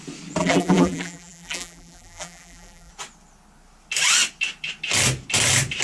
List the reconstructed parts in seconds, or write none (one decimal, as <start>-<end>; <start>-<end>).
0.4-2.9